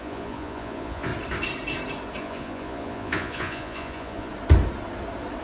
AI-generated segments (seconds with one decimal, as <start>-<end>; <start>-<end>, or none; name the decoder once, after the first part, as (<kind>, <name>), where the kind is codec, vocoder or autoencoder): 0.0-1.1 (vocoder, Vocos); 2.2-4.3